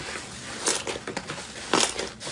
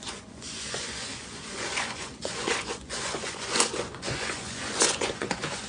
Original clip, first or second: first